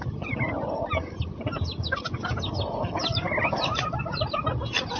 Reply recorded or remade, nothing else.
recorded